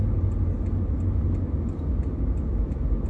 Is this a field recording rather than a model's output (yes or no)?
yes